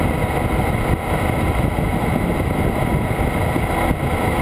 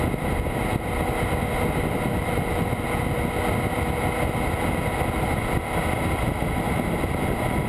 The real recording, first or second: second